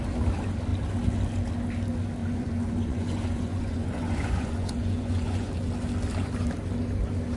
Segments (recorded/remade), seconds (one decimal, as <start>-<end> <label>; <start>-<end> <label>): 0.0-2.2 recorded; 2.2-5.5 remade; 5.5-7.4 recorded